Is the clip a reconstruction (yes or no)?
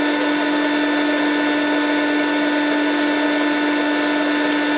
no